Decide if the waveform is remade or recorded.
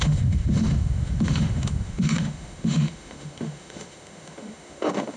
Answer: remade